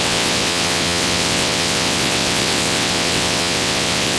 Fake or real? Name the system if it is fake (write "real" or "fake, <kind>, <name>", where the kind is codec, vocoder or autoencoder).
fake, vocoder, WaveNeXt